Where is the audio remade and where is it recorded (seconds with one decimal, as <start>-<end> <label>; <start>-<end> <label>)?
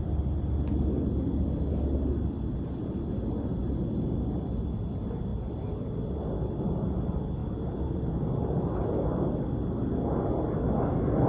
0.0-11.3 recorded